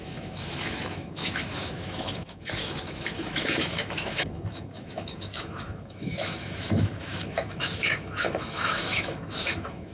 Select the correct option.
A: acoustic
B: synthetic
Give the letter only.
B